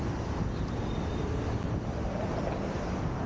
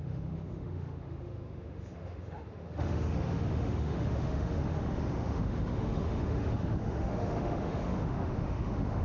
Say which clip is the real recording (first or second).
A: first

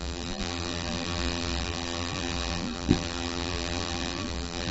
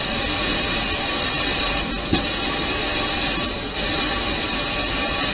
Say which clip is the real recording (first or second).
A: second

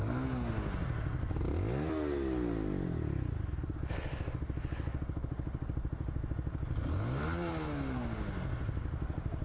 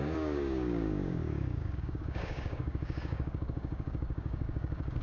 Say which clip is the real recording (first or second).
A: first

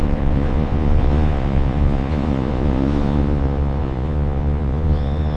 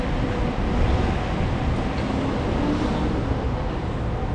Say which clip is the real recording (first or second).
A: second